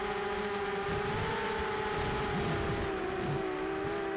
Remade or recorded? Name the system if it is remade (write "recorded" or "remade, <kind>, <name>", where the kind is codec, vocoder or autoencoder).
recorded